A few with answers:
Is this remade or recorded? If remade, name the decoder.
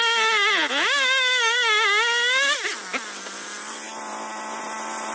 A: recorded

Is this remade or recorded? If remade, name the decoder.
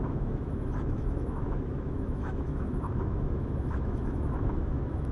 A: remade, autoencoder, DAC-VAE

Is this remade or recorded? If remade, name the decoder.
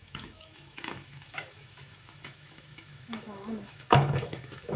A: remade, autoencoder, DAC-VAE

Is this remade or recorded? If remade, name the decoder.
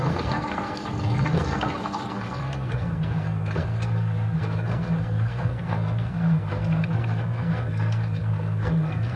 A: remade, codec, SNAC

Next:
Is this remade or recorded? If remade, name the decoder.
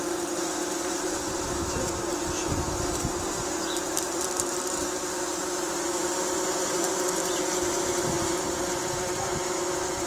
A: remade, vocoder, BigVGAN v2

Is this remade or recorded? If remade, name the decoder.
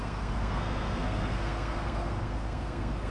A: remade, codec, SNAC